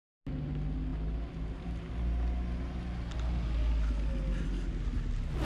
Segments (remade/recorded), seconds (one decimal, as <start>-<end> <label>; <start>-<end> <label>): 0.0-5.4 recorded